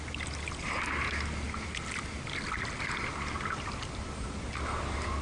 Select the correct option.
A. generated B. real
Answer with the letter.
B